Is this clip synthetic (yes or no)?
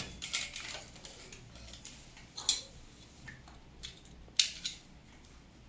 no